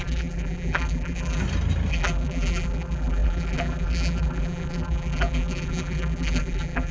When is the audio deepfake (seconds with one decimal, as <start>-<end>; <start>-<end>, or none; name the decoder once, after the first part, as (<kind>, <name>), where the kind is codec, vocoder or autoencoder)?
0.0-1.4 (vocoder, BigVGAN v2); 1.9-6.9